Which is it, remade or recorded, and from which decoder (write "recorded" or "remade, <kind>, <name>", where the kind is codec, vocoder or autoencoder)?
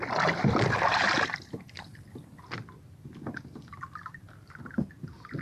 recorded